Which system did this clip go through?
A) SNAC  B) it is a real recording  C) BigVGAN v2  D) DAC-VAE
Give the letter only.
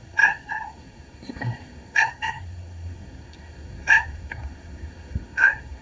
A